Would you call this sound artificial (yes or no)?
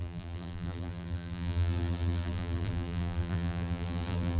yes